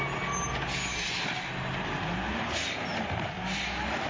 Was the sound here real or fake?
real